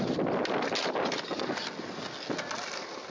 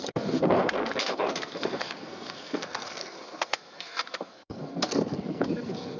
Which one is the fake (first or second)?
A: second